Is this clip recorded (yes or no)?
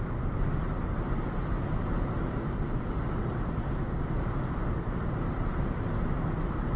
yes